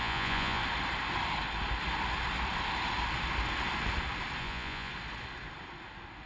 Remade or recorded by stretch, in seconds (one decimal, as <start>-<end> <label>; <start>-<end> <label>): 0.0-0.6 remade; 0.6-4.4 recorded; 4.4-4.9 remade; 4.9-6.3 recorded